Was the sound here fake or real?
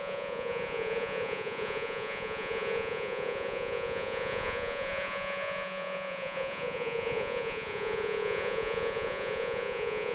fake